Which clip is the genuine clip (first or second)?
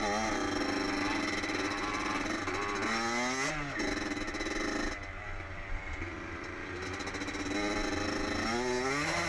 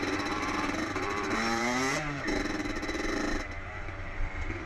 first